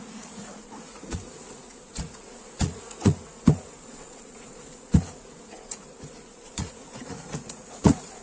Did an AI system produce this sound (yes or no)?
yes